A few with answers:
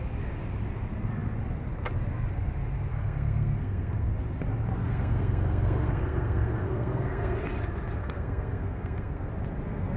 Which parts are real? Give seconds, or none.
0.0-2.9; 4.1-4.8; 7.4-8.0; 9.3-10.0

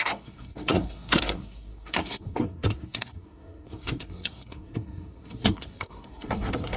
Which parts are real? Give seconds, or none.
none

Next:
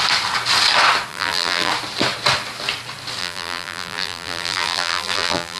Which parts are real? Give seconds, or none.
0.0-1.1; 1.7-3.2